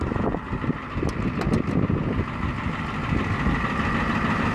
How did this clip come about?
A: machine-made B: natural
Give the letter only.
B